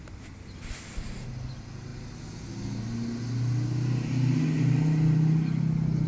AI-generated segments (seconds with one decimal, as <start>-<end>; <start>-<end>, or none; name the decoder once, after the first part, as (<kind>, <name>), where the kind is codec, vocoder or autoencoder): none

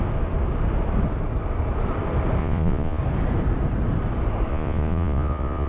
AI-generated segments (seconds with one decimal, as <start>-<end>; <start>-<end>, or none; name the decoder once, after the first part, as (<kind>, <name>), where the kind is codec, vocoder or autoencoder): 2.4-3.0 (vocoder, Vocos); 4.5-5.7

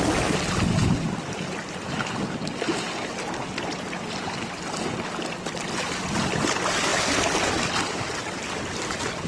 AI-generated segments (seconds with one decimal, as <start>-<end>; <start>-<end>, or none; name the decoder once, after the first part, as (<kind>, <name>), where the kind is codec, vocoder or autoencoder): none

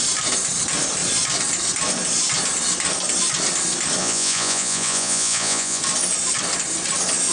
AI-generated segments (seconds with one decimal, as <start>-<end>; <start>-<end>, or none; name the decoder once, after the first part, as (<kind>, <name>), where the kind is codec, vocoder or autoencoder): 4.0-5.8 (vocoder, Vocos)